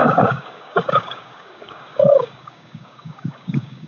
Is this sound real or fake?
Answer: fake